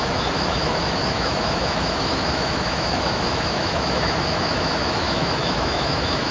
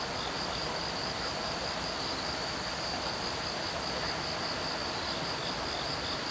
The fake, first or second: first